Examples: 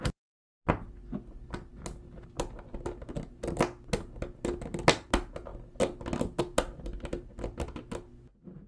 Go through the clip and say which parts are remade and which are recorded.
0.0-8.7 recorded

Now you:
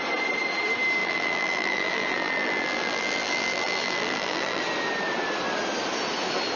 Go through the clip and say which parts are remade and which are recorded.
0.0-1.0 recorded; 1.0-4.6 remade; 4.6-6.6 recorded

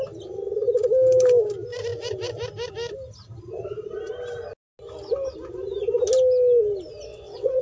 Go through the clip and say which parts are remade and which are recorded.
0.0-7.1 recorded; 7.1-7.6 remade

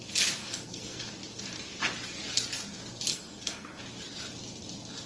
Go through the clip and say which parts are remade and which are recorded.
0.0-0.4 recorded; 0.4-1.1 remade; 1.1-3.1 recorded; 3.1-3.8 remade; 3.8-5.1 recorded

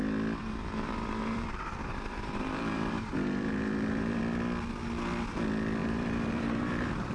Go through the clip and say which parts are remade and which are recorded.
0.0-0.4 recorded; 0.4-4.2 remade; 4.2-5.8 recorded; 5.8-7.1 remade

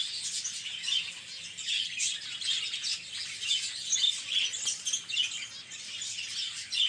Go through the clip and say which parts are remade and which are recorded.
0.0-6.9 recorded

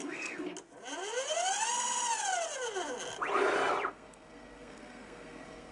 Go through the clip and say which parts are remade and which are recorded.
0.0-0.5 remade; 0.5-3.9 recorded; 3.9-5.7 remade

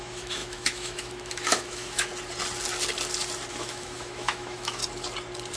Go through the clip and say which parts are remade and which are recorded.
0.0-2.1 remade; 2.1-3.5 recorded; 3.5-4.8 remade; 4.8-5.6 recorded